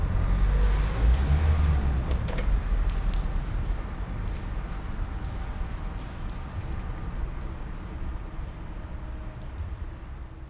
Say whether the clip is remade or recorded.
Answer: recorded